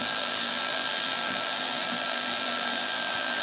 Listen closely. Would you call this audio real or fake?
fake